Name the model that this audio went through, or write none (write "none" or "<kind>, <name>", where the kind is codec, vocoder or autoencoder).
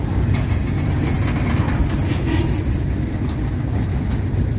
none